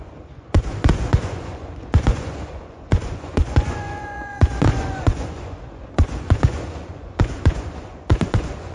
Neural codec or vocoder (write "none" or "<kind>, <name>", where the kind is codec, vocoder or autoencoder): vocoder, Vocos